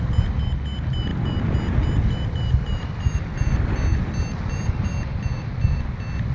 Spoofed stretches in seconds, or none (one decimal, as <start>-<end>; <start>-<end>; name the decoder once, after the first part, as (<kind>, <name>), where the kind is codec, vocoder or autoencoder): none